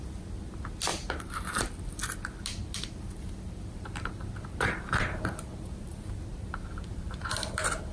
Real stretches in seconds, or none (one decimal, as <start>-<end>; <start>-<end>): 0.0-0.9; 1.7-2.6; 7.3-7.9